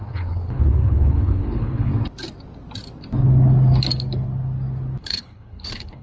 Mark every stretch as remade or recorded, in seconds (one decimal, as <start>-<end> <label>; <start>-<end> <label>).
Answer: 0.0-1.9 remade; 1.9-5.0 recorded; 5.0-6.0 remade